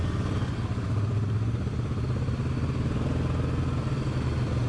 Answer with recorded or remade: recorded